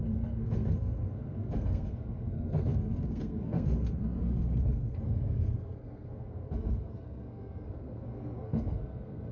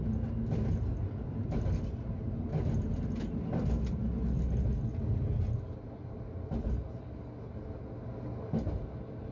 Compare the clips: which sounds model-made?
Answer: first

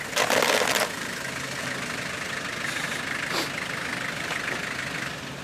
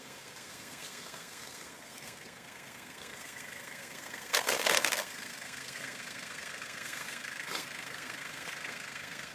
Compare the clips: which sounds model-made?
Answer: second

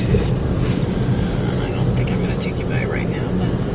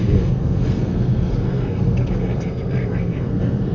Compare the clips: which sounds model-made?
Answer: second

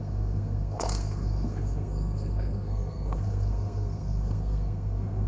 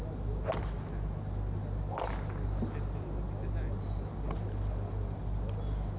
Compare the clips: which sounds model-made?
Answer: first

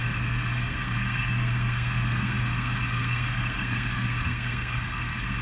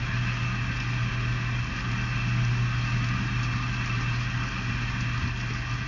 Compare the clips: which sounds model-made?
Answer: first